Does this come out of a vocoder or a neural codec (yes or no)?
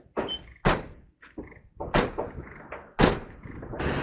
no